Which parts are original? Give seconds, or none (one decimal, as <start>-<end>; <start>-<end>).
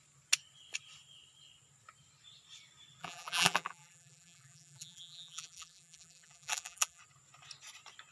0.0-3.0; 7.0-8.1